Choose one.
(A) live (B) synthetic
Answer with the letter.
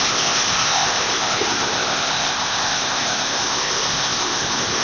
B